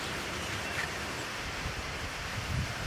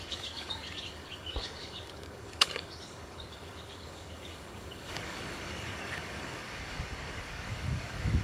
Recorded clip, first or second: first